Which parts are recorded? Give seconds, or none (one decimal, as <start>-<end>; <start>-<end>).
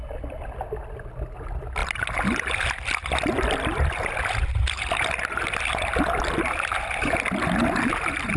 0.0-8.4